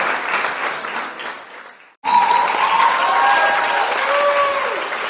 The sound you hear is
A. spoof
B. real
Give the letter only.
B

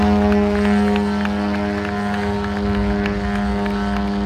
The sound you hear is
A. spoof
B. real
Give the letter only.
B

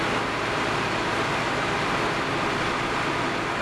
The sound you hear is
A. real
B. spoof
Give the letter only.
A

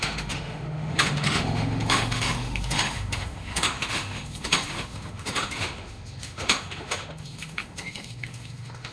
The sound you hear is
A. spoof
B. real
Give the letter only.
A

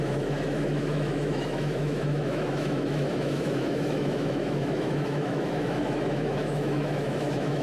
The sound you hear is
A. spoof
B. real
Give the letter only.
A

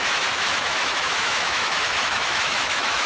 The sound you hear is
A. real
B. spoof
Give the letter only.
B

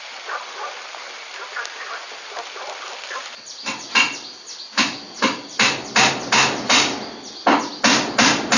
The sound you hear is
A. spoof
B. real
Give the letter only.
B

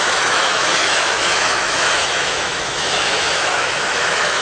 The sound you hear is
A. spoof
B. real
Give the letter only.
A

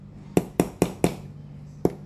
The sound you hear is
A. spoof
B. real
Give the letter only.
B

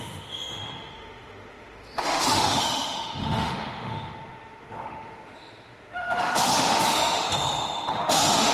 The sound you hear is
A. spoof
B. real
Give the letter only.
A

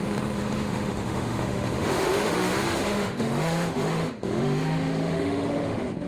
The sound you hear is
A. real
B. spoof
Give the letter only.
B